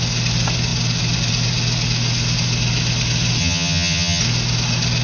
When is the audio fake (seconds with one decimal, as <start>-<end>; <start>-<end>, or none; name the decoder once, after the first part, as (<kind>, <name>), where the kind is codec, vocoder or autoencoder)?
3.4-4.2 (vocoder, HiFi-GAN)